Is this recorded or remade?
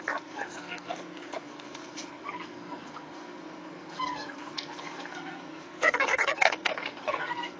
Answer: remade